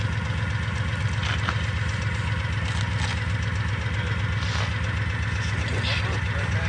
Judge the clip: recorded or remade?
recorded